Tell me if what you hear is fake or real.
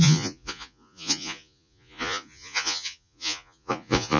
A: fake